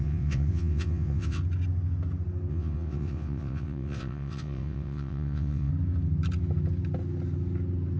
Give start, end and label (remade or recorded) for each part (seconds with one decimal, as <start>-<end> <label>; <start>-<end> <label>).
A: 0.0-1.4 remade; 1.4-2.5 recorded; 2.5-5.7 remade; 5.7-8.0 recorded